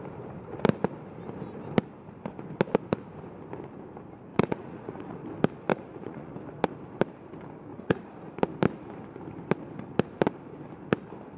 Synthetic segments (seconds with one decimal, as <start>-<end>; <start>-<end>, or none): 4.3-5.2; 5.7-6.3; 7.7-8.3

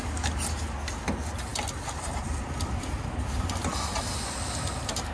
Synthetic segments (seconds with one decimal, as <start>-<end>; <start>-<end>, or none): none

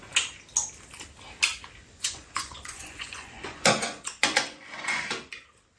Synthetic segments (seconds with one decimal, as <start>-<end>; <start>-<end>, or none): 1.8-5.3

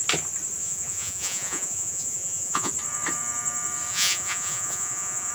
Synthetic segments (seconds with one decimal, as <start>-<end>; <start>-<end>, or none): 0.6-2.7; 3.9-5.3

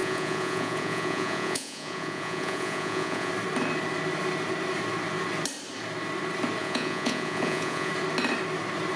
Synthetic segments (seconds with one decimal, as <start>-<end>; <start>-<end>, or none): 0.0-3.3; 6.6-7.9

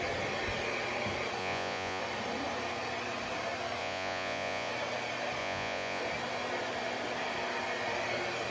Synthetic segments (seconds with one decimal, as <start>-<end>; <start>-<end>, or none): 1.4-2.0; 3.8-4.7; 5.4-6.0